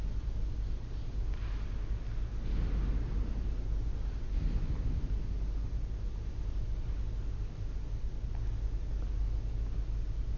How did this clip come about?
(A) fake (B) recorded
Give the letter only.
B